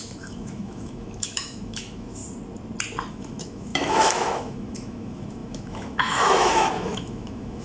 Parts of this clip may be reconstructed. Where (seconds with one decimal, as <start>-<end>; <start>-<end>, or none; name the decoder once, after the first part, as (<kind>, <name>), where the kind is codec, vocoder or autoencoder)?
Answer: 0.0-2.2 (autoencoder, DAC-VAE); 3.1-7.6